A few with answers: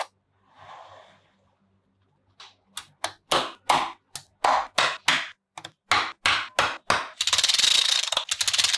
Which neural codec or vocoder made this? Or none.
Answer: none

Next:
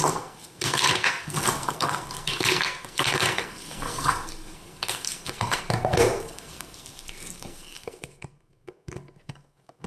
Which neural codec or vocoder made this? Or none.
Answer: codec, SNAC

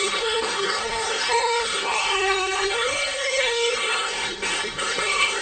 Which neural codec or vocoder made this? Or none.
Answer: codec, SNAC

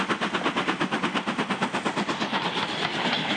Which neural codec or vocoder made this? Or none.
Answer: none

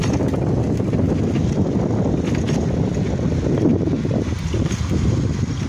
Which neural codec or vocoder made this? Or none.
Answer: none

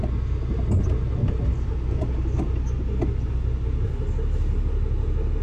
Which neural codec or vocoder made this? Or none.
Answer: none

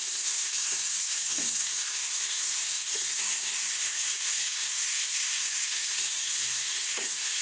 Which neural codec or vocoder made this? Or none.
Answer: codec, SNAC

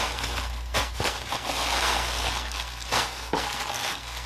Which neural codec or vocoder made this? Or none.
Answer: codec, SNAC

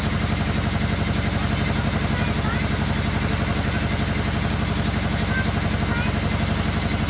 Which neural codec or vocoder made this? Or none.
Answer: none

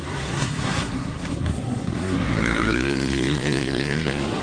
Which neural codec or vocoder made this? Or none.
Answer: codec, SNAC